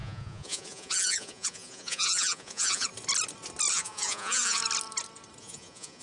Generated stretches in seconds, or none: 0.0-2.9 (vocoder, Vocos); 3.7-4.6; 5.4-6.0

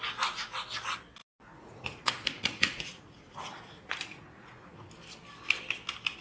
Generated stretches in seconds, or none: 1.2-4.9 (vocoder, Vocos)

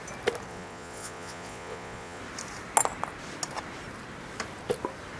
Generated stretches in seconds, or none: 0.5-2.2 (vocoder, Vocos)

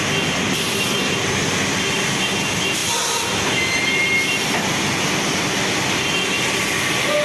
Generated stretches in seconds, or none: none

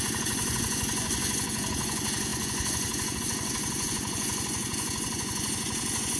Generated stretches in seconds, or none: 0.0-6.2 (vocoder, Vocos)

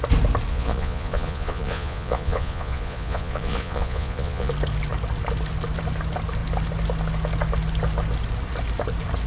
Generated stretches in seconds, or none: 0.5-4.5 (vocoder, Vocos)

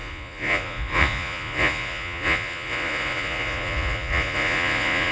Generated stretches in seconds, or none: 0.0-5.1 (vocoder, Vocos)

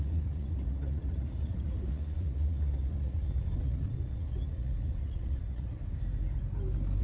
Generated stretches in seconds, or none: 0.0-5.8 (vocoder, Vocos)